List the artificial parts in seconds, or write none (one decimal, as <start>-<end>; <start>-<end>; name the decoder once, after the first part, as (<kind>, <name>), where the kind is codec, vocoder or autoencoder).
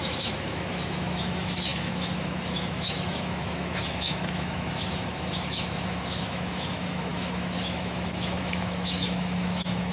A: 0.0-9.9 (autoencoder, DAC-VAE)